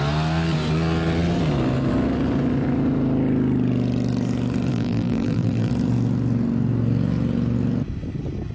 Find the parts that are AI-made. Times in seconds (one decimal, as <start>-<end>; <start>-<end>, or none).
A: 4.7-5.7